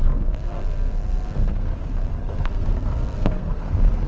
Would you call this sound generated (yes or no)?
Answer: yes